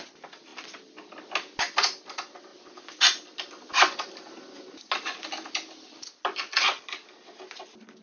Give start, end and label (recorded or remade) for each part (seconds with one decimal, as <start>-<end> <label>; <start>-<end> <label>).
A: 0.0-0.5 recorded; 0.5-1.1 remade; 1.1-8.0 recorded